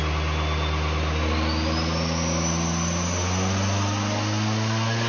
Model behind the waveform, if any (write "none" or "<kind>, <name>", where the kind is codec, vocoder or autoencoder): none